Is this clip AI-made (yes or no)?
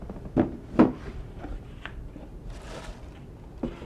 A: no